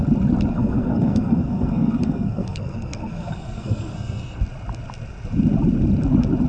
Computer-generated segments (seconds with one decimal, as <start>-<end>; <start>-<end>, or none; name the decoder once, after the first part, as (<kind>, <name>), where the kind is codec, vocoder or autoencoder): 0.5-4.4 (codec, SNAC)

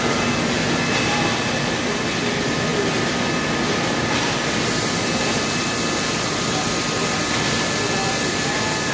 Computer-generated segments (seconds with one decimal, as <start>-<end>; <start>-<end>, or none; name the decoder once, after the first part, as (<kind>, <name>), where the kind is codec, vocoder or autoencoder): none

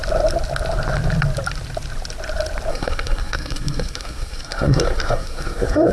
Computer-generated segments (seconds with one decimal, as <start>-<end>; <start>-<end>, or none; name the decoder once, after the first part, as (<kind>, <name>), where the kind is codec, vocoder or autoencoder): 2.7-5.9 (codec, SNAC)

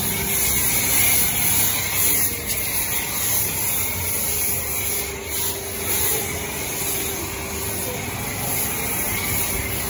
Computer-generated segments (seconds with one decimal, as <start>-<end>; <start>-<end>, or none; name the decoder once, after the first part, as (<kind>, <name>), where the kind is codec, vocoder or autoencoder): none

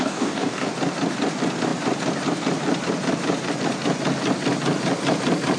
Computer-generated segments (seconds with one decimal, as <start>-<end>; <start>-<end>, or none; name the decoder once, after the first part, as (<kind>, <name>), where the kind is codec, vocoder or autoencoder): 0.0-0.7 (codec, DAC)

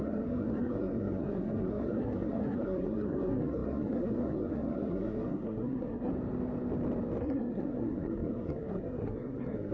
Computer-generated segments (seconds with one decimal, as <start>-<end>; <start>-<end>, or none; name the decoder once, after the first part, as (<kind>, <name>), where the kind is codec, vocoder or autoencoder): 0.0-6.1 (codec, SNAC); 7.2-9.7

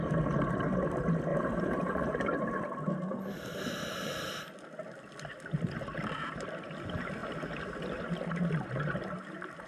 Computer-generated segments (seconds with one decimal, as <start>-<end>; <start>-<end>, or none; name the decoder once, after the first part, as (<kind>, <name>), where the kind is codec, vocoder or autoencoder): 1.3-2.4 (vocoder, BigVGAN v2)

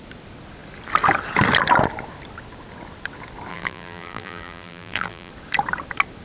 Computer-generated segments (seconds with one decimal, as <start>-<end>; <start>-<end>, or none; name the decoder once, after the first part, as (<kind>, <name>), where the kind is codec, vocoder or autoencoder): 3.5-5.3 (vocoder, BigVGAN v2)